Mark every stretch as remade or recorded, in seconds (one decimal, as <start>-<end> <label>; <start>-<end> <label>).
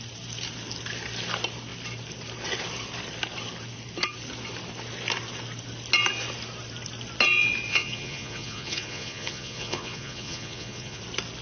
0.0-7.7 recorded; 7.7-11.0 remade; 11.0-11.4 recorded